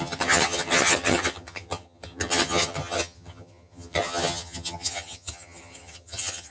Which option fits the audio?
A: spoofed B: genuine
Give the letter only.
A